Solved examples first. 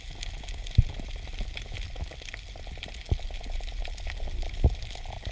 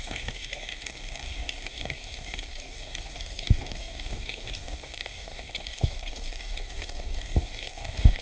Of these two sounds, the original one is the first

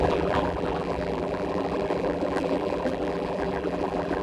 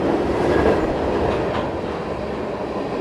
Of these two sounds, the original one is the second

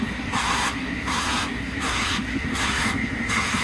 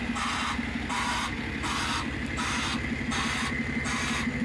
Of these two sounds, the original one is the second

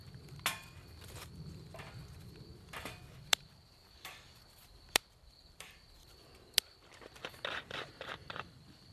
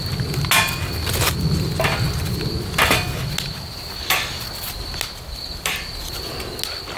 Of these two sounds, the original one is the second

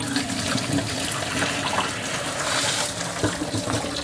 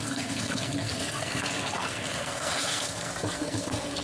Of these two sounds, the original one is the first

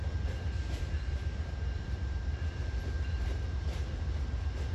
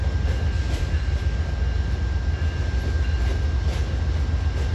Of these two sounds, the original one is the second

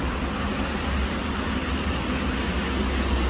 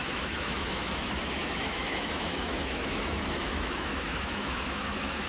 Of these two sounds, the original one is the first